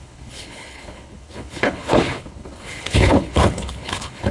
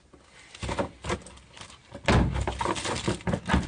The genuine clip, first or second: second